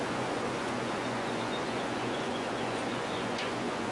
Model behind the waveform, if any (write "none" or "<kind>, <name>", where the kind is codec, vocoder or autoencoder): vocoder, Vocos